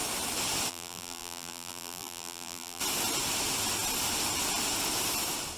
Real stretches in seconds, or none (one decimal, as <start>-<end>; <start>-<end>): 0.0-0.7; 2.8-5.6